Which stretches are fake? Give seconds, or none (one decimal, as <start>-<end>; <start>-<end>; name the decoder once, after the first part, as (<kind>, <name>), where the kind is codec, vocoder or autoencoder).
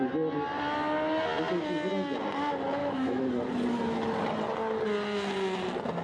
2.8-3.3 (autoencoder, DAC-VAE)